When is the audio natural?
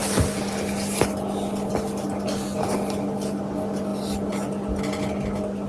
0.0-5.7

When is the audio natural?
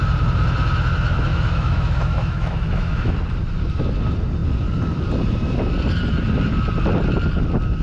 0.0-1.3; 3.1-7.8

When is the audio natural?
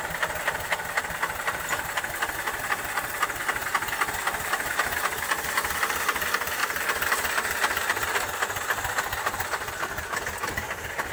0.0-11.1